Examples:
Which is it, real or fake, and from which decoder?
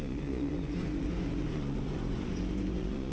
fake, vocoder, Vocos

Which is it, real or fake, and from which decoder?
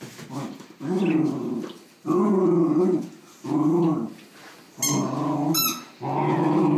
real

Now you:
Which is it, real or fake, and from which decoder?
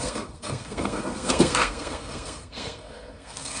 fake, codec, SNAC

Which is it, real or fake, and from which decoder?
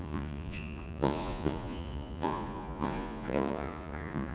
fake, vocoder, Vocos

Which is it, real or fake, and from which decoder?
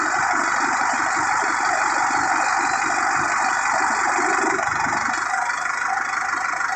real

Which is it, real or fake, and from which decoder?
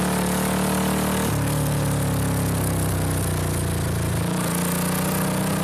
real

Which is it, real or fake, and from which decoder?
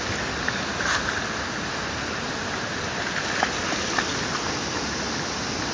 real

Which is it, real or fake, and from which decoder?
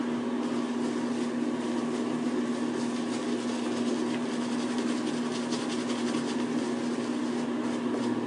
real